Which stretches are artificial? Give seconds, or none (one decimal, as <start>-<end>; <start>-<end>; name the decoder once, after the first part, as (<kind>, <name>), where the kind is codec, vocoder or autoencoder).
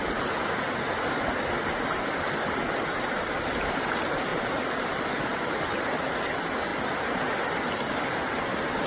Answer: 4.3-5.0 (vocoder, BigVGAN v2)